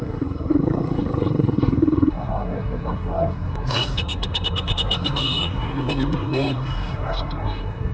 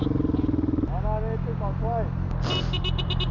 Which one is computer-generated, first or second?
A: first